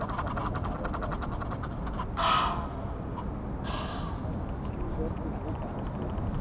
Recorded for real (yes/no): yes